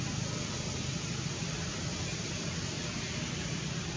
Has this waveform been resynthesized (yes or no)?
no